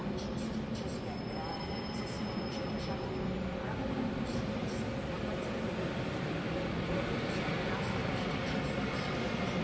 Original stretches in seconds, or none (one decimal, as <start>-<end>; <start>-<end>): 0.0-9.6